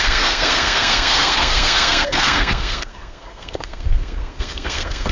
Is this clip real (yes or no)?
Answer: no